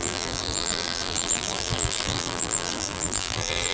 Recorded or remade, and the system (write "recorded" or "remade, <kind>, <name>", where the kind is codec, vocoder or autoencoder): remade, vocoder, BigVGAN v2